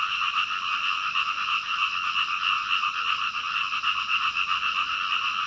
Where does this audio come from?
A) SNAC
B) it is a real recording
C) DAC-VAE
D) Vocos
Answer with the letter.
B